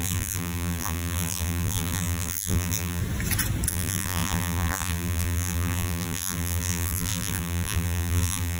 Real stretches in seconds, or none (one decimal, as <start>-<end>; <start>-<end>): 3.0-3.7